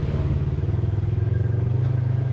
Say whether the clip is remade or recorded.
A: remade